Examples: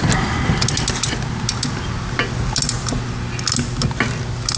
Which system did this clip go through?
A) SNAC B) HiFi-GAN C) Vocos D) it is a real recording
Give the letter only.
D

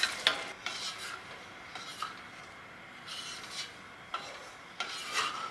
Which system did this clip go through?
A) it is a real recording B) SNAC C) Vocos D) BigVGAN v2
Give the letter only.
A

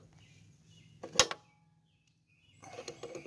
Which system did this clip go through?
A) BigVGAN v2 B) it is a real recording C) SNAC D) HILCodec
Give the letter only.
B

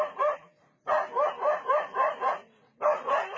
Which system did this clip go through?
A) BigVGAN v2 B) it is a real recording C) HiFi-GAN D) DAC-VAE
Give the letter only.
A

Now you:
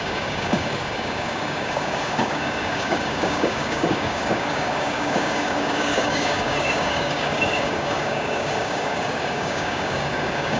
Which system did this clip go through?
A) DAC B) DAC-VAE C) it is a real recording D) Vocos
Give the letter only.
A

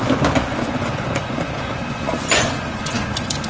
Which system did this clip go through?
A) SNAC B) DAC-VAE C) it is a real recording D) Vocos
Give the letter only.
D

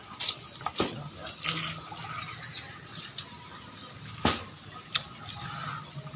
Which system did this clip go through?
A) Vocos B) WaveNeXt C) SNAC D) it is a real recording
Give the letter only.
D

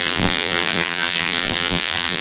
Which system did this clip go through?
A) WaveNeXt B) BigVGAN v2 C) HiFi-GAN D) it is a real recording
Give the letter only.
B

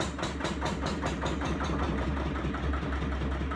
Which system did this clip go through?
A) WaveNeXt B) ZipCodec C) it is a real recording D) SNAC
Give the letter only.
C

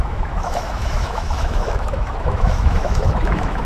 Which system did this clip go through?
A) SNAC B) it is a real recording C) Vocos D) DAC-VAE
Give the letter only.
D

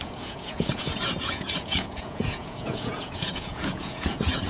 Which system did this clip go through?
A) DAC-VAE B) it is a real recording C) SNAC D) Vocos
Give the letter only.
D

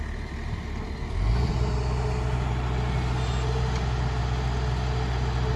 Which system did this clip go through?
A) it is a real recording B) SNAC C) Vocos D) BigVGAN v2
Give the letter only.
A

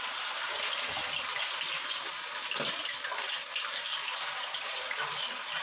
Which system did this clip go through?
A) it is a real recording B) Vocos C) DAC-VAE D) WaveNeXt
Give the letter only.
A